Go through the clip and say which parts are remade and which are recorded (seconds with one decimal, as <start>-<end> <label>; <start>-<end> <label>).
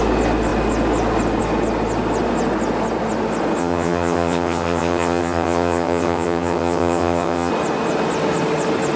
0.0-3.6 recorded; 3.6-7.5 remade; 7.5-9.0 recorded